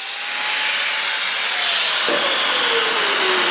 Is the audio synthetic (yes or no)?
no